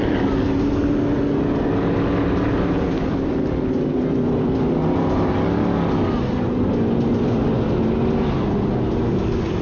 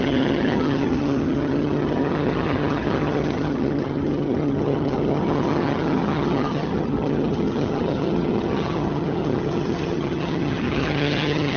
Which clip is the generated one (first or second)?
second